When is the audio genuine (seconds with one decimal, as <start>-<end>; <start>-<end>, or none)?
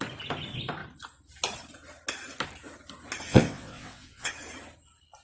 0.0-3.3; 4.3-5.2